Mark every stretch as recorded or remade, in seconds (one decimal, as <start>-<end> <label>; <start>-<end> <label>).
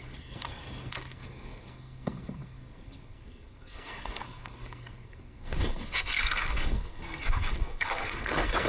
0.0-8.7 remade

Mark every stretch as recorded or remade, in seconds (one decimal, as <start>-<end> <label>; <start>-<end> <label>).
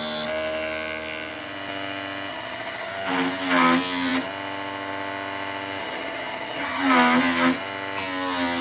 0.0-2.3 recorded; 2.3-2.9 remade; 2.9-5.8 recorded; 5.8-6.8 remade; 6.8-8.6 recorded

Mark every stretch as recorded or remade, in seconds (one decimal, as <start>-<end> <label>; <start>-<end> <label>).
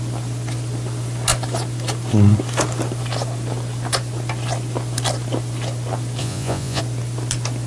0.0-6.2 recorded; 6.2-6.8 remade; 6.8-7.7 recorded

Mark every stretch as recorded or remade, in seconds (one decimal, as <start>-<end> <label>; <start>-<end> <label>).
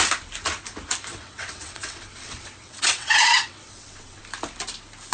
0.0-1.1 recorded; 1.1-4.2 remade; 4.2-5.1 recorded